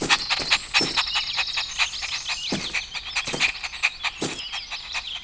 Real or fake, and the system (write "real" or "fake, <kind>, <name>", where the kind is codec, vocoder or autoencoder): real